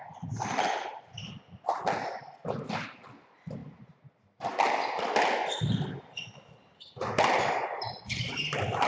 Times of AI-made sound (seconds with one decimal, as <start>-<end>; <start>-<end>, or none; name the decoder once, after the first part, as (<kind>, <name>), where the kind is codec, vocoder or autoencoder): none